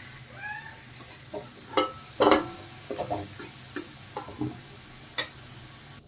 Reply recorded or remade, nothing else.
recorded